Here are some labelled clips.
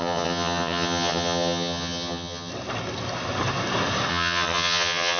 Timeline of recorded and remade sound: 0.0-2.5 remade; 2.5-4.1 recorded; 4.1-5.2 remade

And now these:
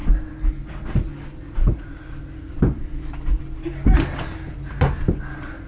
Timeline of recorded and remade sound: 0.0-5.7 recorded

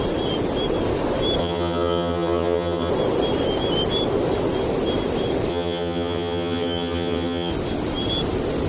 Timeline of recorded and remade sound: 0.0-1.4 recorded; 1.4-2.9 remade; 2.9-5.5 recorded; 5.5-7.5 remade; 7.5-8.7 recorded

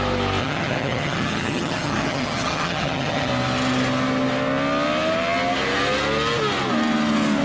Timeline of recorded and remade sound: 0.0-0.4 recorded; 0.4-3.3 remade; 3.3-7.4 recorded

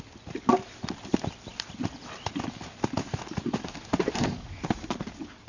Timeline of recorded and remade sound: 0.0-5.5 recorded